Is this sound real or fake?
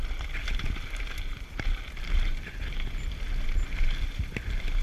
real